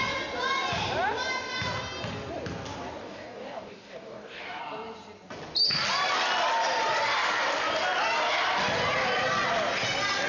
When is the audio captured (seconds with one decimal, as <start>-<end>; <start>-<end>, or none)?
0.0-3.0; 4.6-10.3

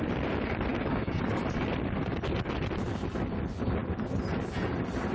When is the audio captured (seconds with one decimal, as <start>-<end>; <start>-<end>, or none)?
0.0-0.7; 1.4-5.1